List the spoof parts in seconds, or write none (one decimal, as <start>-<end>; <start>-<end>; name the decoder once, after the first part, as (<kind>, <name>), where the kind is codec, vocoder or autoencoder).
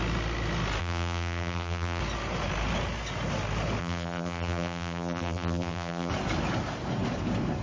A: 0.8-2.0 (vocoder, BigVGAN v2); 3.8-6.1